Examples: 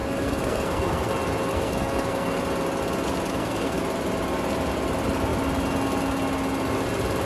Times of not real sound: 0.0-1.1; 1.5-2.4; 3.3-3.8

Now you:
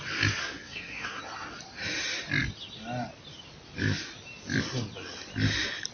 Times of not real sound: 0.4-1.2

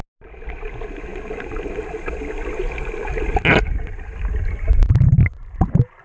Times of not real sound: none

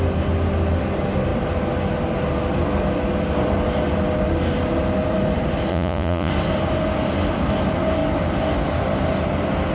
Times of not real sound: 5.7-6.3

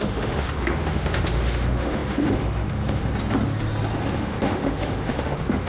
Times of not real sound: 0.0-3.1; 4.2-5.7